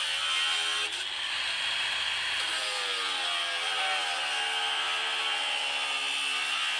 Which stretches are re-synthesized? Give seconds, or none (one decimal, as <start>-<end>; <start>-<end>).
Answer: none